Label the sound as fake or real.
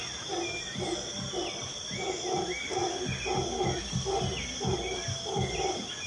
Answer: real